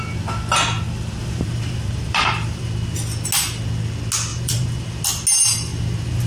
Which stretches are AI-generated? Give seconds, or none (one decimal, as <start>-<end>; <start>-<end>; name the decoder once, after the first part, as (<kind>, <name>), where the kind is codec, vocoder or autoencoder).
1.2-2.7 (vocoder, BigVGAN v2); 4.3-5.0; 5.7-6.3